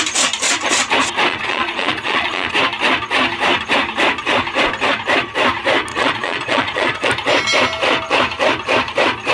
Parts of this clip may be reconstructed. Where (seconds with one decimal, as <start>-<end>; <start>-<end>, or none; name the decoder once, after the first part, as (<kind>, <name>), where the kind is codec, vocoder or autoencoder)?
1.3-2.5 (vocoder, Vocos); 5.9-7.1